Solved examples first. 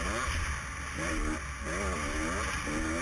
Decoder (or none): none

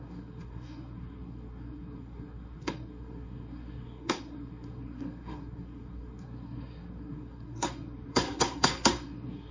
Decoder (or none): codec, SNAC